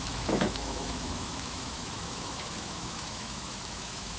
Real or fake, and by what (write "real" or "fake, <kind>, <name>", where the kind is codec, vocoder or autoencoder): fake, autoencoder, DAC-VAE